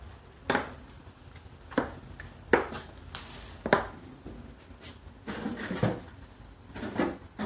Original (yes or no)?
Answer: yes